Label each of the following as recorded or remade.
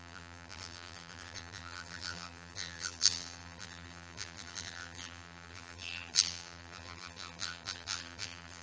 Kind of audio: remade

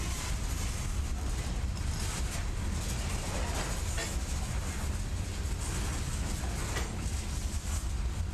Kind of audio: recorded